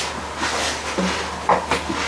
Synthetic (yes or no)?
no